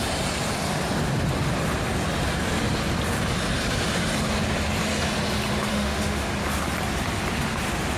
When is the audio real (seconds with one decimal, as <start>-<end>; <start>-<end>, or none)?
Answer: 0.0-5.7; 6.3-8.0